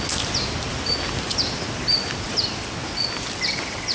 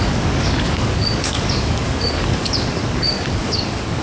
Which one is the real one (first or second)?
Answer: first